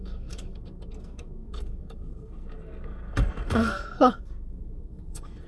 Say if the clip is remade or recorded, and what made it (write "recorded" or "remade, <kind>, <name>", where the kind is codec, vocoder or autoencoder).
remade, codec, SNAC